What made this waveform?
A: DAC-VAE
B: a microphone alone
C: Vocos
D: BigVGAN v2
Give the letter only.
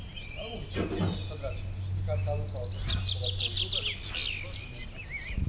B